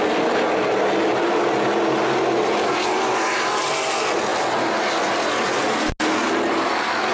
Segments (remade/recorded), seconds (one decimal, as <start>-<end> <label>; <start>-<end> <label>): 0.0-7.1 recorded